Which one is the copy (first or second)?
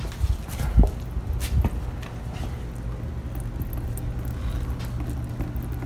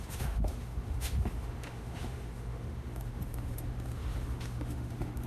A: second